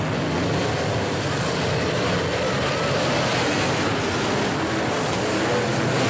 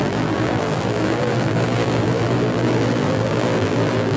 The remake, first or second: second